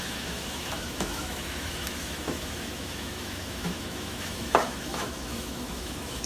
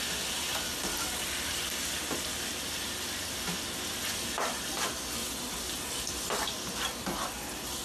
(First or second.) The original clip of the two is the second